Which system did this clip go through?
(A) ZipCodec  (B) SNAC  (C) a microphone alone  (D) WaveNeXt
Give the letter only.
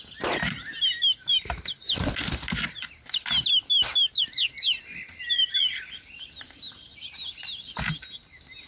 C